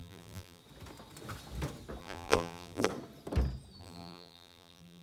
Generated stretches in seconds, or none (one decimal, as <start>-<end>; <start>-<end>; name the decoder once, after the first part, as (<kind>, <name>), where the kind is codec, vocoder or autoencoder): 0.0-0.6 (vocoder, BigVGAN v2); 2.0-2.9; 3.8-5.0